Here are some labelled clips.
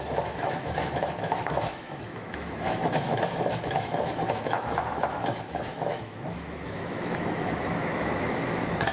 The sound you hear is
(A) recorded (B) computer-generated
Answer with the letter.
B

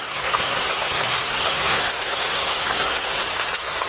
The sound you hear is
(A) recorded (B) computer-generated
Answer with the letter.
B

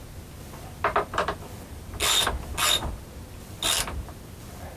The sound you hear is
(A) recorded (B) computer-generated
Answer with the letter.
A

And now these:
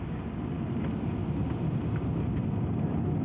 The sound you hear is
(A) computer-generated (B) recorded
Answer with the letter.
B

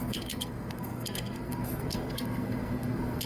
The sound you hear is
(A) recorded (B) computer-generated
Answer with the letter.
B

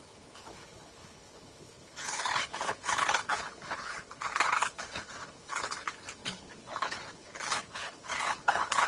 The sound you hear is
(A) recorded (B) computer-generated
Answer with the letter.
B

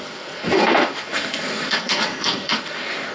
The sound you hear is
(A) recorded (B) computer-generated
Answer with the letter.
B